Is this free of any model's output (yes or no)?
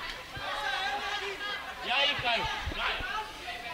no